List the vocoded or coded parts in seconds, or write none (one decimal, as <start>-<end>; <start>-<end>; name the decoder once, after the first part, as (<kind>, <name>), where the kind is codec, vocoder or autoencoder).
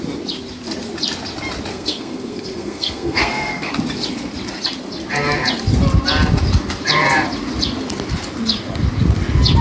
1.7-3.7 (codec, SNAC)